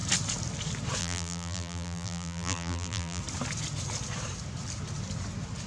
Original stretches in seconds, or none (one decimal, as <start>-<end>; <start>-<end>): 0.0-1.0; 3.2-5.7